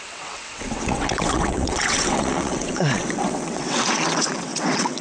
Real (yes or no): no